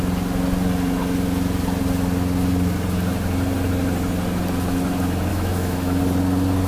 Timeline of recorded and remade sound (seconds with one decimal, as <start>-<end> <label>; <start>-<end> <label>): 0.0-5.3 recorded; 5.3-6.0 remade; 6.0-6.7 recorded